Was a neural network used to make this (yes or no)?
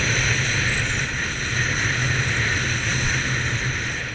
no